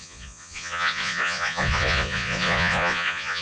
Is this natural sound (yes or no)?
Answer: no